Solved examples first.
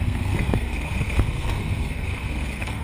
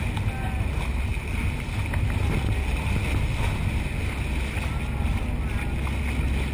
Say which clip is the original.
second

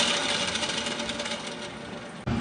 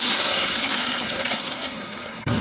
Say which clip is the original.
first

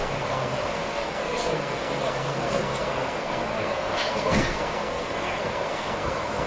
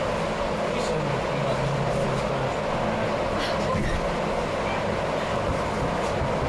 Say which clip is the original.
second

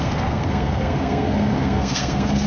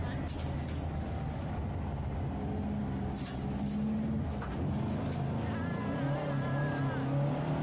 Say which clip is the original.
second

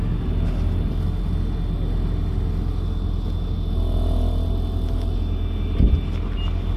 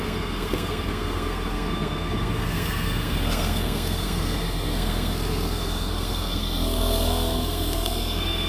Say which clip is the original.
first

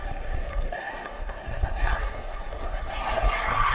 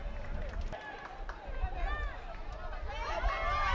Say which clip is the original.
second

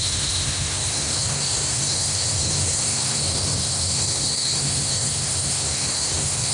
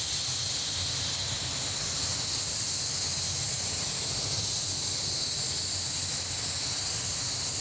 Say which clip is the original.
second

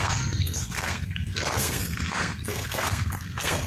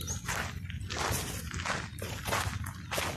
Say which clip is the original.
second